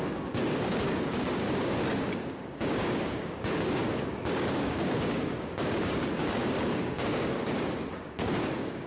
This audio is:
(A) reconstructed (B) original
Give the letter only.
A